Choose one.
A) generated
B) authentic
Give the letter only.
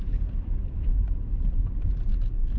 A